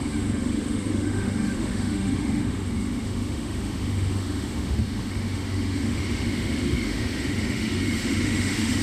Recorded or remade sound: remade